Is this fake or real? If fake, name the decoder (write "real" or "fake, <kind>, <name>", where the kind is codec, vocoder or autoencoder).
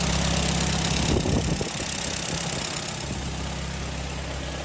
real